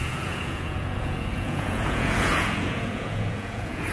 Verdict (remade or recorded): remade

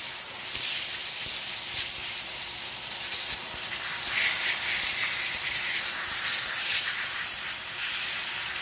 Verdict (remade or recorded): remade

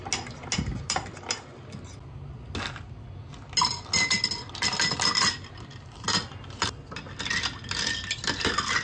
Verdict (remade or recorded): recorded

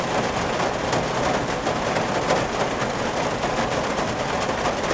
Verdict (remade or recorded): recorded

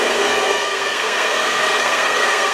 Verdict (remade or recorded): remade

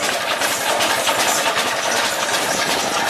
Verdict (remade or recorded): recorded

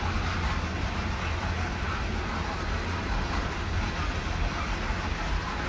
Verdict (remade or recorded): recorded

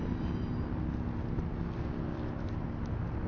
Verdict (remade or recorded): recorded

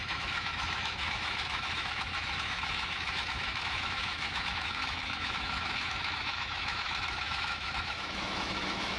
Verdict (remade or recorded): remade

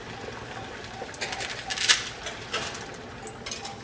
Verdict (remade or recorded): recorded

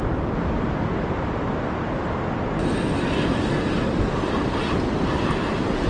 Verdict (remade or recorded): recorded